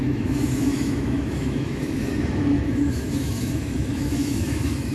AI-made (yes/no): yes